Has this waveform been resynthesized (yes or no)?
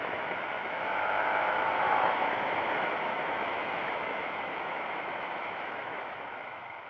yes